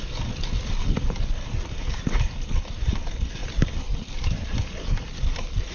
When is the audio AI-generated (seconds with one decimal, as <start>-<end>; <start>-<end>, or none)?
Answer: none